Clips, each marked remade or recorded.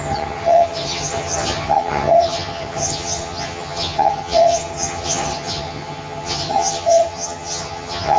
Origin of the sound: remade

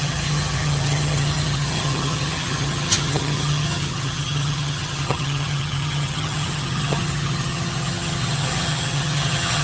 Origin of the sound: remade